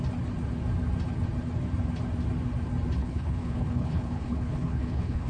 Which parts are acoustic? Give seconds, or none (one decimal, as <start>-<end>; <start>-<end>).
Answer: 0.0-3.0